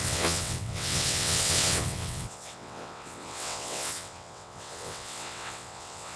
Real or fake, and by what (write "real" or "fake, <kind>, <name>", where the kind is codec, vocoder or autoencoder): fake, vocoder, WaveNeXt